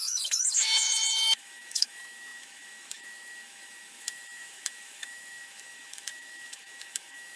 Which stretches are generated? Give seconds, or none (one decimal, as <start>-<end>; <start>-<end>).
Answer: 0.0-7.4